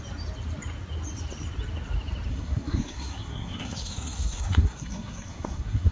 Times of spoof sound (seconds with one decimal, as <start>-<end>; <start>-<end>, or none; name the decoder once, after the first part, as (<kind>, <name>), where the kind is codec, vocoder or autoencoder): 2.3-5.9 (codec, SNAC)